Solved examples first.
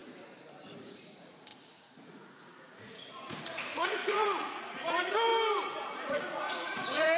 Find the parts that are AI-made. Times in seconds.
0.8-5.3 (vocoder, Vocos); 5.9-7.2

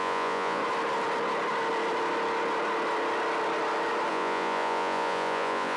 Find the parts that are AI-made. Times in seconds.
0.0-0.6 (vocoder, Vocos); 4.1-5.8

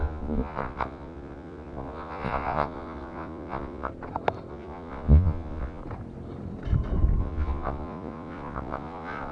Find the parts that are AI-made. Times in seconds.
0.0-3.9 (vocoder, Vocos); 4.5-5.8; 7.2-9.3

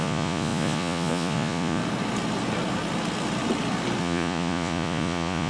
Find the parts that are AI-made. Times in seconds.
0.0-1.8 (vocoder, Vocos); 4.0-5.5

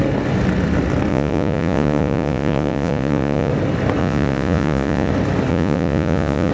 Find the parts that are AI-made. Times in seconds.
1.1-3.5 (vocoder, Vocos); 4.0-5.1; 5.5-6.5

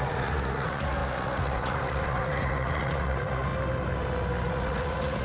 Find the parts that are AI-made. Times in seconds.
0.0-3.5 (vocoder, Vocos); 4.5-5.2

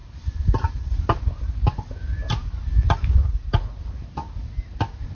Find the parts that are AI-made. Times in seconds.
3.2-3.8 (vocoder, Vocos)

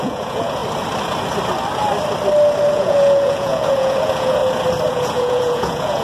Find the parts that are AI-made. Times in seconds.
0.0-0.6 (vocoder, Vocos); 2.7-4.4; 4.9-6.0